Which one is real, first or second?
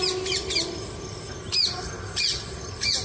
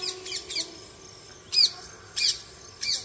second